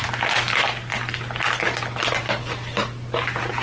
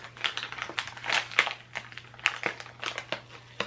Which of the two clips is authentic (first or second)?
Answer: second